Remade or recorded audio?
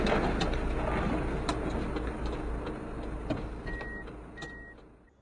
recorded